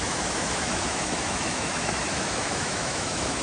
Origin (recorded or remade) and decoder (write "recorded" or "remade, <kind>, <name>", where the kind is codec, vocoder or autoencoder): remade, autoencoder, DAC-VAE